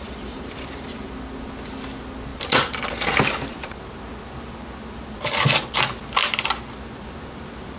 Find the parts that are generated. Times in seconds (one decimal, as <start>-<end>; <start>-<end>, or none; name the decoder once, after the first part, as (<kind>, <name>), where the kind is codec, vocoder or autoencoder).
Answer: none